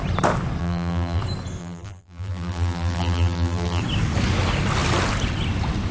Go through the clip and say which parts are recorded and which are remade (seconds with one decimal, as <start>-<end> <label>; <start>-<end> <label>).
0.0-0.6 recorded; 0.6-1.2 remade; 1.2-1.6 recorded; 1.6-3.8 remade; 3.8-5.9 recorded

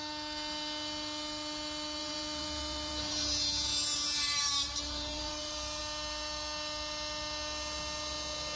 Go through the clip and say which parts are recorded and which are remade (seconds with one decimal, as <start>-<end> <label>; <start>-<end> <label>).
0.0-2.0 recorded; 2.0-5.8 remade; 5.8-8.6 recorded

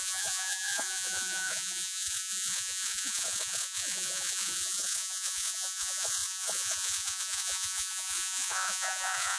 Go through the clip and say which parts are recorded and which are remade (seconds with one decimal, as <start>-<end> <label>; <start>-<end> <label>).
0.0-9.4 remade

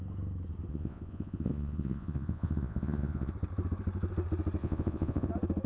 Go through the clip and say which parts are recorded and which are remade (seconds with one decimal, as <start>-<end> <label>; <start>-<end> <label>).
0.0-0.7 recorded; 0.7-3.3 remade; 3.3-4.6 recorded; 4.6-5.3 remade; 5.3-5.7 recorded

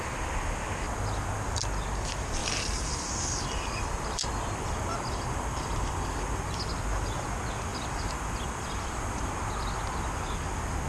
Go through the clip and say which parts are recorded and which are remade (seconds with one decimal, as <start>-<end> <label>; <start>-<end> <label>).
0.0-2.4 recorded; 2.4-6.4 remade; 6.4-7.7 recorded; 7.7-9.4 remade; 9.4-10.9 recorded

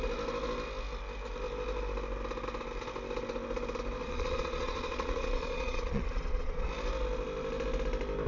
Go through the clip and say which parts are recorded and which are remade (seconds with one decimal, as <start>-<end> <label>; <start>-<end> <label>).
0.0-4.0 recorded; 4.0-6.7 remade; 6.7-8.3 recorded

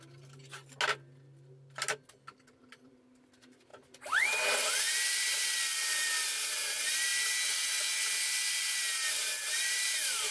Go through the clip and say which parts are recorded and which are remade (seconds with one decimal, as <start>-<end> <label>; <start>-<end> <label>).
0.0-0.4 remade; 0.4-2.6 recorded; 2.6-7.1 remade; 7.1-9.1 recorded; 9.1-10.3 remade

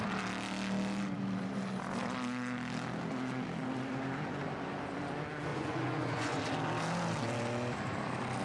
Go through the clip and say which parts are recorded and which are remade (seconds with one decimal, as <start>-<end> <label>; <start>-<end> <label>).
0.0-5.5 recorded; 5.5-6.4 remade; 6.4-8.4 recorded